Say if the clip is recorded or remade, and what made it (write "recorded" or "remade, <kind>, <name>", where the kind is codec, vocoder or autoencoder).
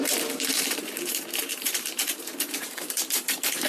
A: remade, vocoder, BigVGAN v2